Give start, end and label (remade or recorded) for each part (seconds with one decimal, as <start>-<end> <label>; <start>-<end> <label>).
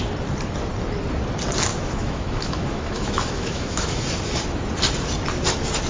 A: 0.0-1.7 recorded; 1.7-4.0 remade; 4.0-5.9 recorded